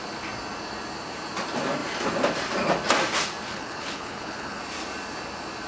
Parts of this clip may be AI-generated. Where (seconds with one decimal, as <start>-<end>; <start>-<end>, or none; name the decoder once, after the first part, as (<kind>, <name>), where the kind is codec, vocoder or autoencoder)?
3.5-4.6 (codec, HILCodec)